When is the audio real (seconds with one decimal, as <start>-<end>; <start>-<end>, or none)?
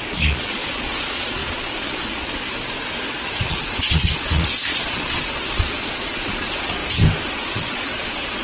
6.8-7.4